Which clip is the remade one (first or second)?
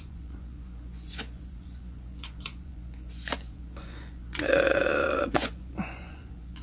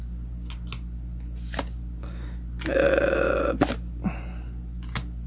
first